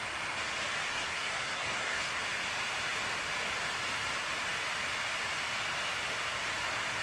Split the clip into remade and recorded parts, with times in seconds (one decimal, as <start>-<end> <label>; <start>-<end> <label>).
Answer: 0.0-0.9 recorded; 0.9-2.2 remade; 2.2-7.0 recorded